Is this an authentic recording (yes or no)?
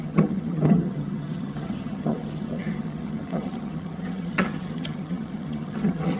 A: no